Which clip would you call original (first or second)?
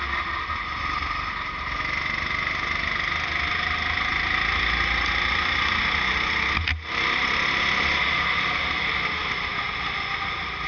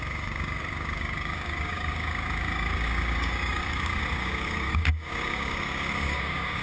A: first